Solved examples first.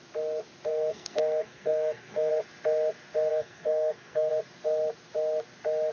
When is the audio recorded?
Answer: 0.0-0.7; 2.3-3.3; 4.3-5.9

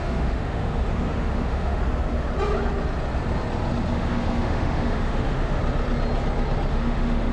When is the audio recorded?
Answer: 1.8-3.9; 5.6-6.7

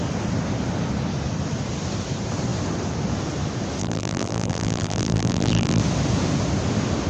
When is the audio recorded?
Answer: 0.0-3.8; 5.8-7.1

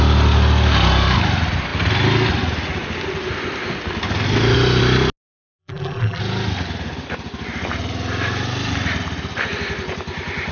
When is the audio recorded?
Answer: 0.0-5.6; 6.2-10.5

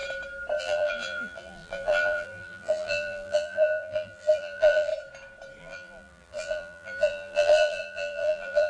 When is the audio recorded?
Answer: 0.0-0.6; 4.9-5.6